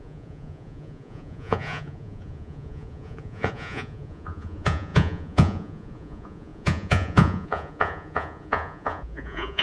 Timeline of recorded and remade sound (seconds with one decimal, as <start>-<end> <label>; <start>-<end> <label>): 0.0-9.6 remade